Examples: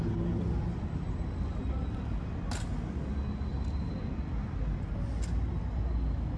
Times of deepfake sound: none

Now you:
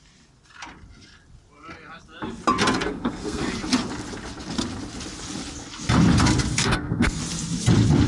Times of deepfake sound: 2.9-3.5 (codec, SNAC); 6.5-7.2